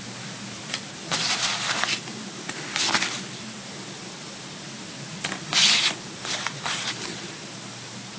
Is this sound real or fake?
real